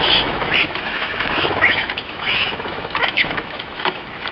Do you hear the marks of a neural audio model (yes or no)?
yes